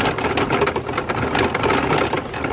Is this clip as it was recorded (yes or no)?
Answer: yes